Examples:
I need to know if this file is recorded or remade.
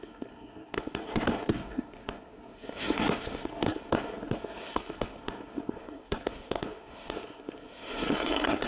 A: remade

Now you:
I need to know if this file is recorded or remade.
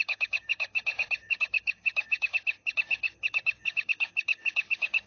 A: remade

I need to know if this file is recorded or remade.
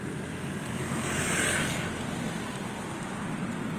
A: recorded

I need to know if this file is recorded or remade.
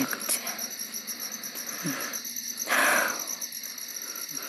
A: recorded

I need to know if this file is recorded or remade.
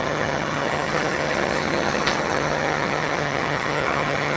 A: remade